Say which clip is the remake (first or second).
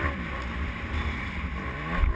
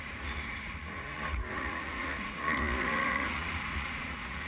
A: second